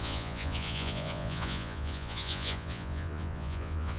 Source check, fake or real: fake